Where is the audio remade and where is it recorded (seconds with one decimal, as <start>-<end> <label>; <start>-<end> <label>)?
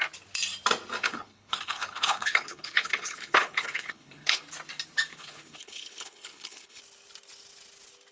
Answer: 0.0-1.0 recorded; 1.0-4.4 remade; 4.4-5.1 recorded; 5.1-6.8 remade; 6.8-8.1 recorded